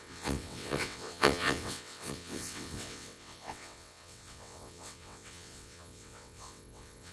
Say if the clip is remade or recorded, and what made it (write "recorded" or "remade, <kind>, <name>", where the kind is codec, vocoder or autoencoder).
remade, vocoder, WaveNeXt